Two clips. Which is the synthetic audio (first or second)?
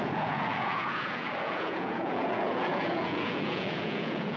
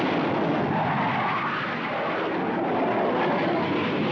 first